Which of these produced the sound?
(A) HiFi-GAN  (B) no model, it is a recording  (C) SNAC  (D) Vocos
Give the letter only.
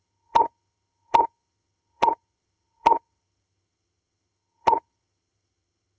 A